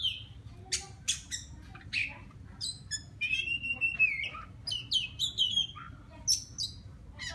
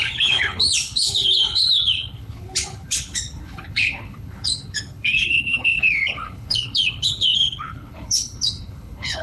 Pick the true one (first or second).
first